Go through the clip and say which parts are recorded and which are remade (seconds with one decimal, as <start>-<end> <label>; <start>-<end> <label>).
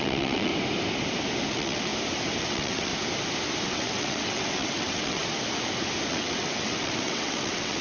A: 0.0-0.5 remade; 0.5-1.5 recorded; 1.5-1.9 remade; 1.9-2.4 recorded; 2.4-2.9 remade; 2.9-3.7 recorded; 3.7-5.2 remade; 5.2-6.1 recorded; 6.1-7.8 remade